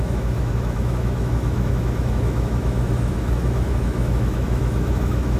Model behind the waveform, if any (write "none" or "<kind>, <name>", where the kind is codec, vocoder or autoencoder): autoencoder, DAC-VAE